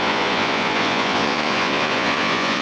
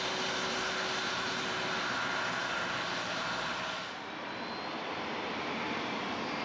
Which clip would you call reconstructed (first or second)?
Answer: first